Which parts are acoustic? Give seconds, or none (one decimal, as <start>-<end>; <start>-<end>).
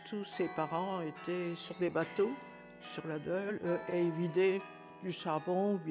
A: 0.0-1.6; 2.5-3.9; 4.6-5.9